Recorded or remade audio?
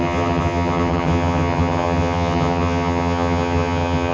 remade